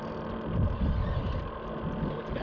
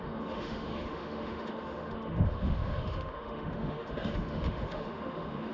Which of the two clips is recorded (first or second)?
first